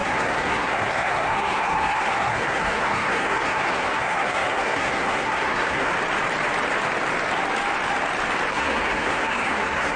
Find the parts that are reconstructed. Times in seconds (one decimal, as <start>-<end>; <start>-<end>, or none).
0.0-5.9; 8.5-10.0